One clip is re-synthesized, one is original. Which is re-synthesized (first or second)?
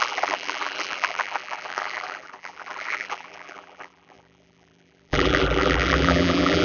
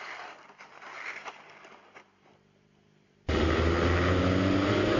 first